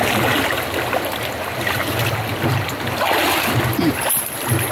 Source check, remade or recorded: recorded